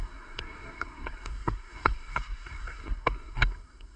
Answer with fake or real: fake